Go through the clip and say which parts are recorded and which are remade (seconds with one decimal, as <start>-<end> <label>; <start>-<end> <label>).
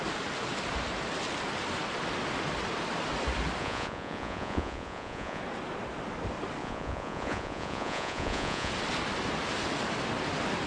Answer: 0.0-3.6 recorded; 3.6-5.4 remade; 5.4-6.6 recorded; 6.6-8.7 remade; 8.7-10.7 recorded